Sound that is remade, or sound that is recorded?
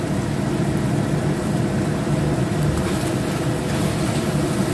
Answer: recorded